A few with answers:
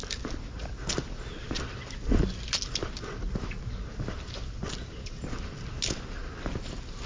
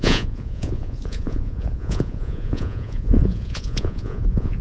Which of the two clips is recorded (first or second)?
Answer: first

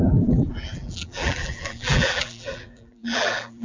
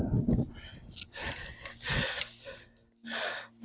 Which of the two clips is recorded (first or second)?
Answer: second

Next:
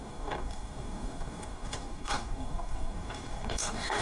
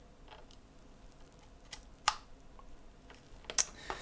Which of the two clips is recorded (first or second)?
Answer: second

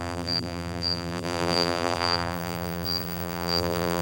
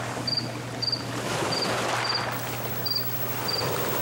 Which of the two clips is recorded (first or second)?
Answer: second